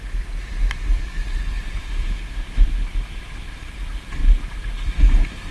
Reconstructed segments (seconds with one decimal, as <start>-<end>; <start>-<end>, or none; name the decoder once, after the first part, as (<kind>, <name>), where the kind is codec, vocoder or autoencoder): 1.8-2.7 (autoencoder, DAC-VAE)